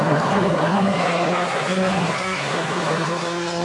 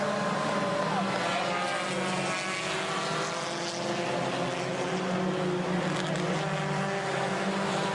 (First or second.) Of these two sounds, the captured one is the second